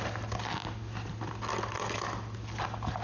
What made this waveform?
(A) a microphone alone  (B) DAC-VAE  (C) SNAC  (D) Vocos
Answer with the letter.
A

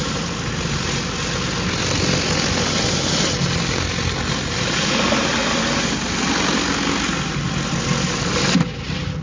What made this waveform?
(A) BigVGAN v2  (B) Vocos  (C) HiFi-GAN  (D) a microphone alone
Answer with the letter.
D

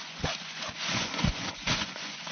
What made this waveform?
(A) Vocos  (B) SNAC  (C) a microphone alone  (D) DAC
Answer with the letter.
A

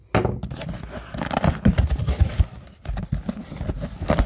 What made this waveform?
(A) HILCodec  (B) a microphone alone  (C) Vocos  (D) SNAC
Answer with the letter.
B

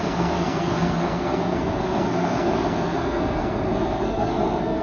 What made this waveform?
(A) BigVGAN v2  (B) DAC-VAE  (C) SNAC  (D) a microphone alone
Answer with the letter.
C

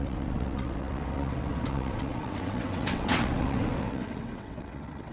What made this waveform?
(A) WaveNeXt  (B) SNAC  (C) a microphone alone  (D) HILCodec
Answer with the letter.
A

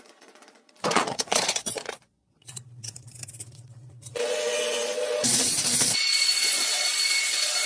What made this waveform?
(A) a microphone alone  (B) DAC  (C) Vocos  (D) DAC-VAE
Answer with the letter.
C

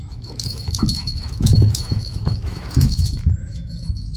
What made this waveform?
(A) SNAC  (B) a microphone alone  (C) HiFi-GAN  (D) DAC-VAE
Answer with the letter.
D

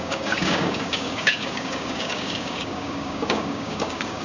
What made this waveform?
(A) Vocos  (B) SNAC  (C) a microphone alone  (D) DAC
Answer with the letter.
D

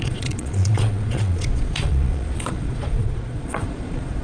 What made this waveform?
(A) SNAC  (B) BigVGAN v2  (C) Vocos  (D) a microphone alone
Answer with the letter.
C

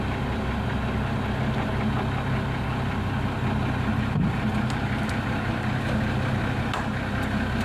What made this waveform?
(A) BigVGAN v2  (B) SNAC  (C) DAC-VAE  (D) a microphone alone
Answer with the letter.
D